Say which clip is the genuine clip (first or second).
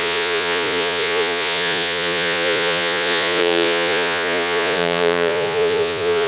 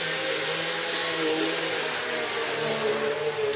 second